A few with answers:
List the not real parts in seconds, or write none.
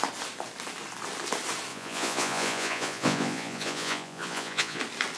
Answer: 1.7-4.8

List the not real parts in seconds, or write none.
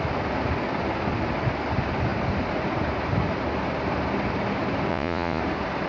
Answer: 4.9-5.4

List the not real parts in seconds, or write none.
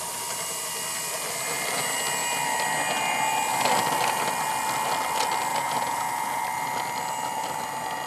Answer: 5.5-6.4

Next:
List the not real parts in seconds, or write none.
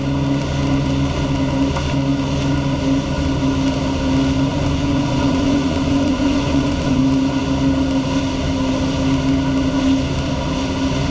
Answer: 4.5-7.0